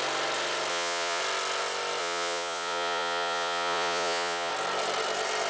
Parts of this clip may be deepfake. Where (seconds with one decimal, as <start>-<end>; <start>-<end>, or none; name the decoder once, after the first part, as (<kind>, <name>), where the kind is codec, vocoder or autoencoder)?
0.7-1.2 (vocoder, Vocos); 2.0-4.5

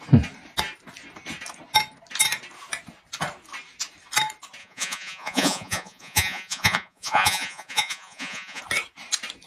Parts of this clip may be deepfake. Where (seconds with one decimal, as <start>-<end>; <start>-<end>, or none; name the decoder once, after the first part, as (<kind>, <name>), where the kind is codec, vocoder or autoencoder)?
4.6-8.6 (vocoder, Vocos)

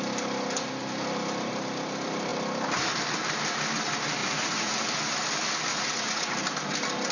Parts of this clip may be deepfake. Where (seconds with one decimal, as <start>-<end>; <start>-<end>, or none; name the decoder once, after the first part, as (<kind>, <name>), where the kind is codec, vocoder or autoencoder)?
4.2-4.8 (vocoder, Vocos); 5.7-6.3

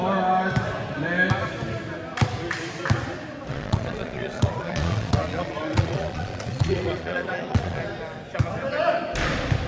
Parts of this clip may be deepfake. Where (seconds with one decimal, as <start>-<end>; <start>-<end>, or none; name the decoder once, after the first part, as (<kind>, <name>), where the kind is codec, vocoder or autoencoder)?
3.5-7.8 (vocoder, Vocos)

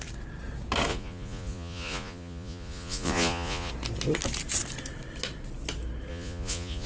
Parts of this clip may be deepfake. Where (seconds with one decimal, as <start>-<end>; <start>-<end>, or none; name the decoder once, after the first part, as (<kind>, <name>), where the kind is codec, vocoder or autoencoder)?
0.9-3.7 (vocoder, Vocos); 6.1-6.9

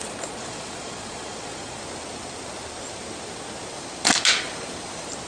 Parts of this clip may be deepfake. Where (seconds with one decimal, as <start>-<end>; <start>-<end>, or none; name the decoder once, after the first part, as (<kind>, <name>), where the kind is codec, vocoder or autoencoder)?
0.0-1.8 (vocoder, Vocos)

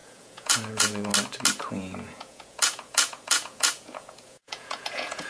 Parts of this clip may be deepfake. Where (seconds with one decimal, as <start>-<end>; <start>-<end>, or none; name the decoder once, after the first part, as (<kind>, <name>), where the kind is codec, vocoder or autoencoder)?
0.0-1.1 (vocoder, Vocos); 1.7-5.3

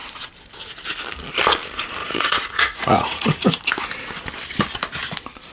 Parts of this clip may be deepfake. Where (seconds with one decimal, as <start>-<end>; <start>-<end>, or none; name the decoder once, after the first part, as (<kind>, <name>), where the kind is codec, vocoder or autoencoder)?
2.0-3.6 (vocoder, Vocos)